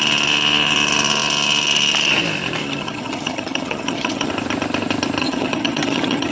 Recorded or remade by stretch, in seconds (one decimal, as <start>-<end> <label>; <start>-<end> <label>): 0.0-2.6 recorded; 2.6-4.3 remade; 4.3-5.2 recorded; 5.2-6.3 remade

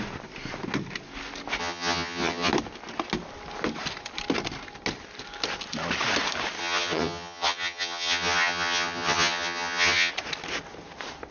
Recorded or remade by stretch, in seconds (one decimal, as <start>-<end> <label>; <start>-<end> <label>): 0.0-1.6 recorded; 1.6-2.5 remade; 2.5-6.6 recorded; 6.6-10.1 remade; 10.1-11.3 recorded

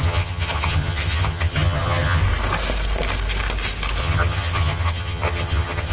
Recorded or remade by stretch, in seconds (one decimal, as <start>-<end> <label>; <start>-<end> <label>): 0.0-2.2 remade; 2.2-4.0 recorded; 4.0-5.9 remade

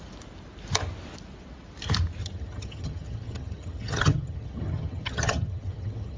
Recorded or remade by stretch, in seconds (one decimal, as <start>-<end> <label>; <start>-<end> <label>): 0.0-2.2 recorded; 2.2-6.2 remade

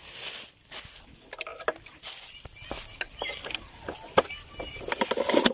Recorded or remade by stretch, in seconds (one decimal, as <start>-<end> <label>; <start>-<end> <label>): 0.0-5.5 recorded

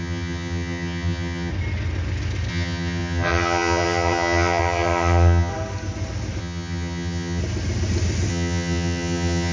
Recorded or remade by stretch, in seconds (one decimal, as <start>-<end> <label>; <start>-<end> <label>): 0.0-1.5 remade; 1.5-2.5 recorded; 2.5-5.5 remade; 5.5-6.4 recorded; 6.4-7.4 remade; 7.4-8.3 recorded; 8.3-9.5 remade

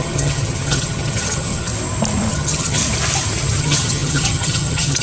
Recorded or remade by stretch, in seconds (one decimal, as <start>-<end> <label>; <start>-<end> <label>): 0.0-1.7 remade; 1.7-2.3 recorded; 2.3-2.8 remade; 2.8-3.6 recorded; 3.6-5.0 remade